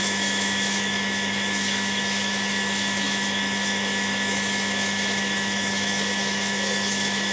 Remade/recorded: remade